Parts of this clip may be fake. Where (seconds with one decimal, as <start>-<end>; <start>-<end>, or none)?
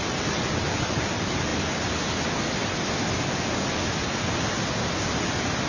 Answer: none